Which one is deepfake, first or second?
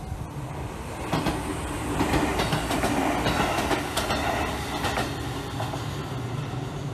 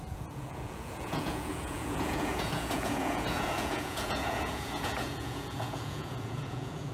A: second